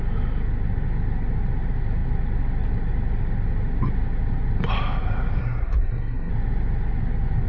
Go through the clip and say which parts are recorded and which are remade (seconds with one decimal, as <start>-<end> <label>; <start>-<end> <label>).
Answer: 0.0-5.4 recorded; 5.4-6.3 remade; 6.3-7.5 recorded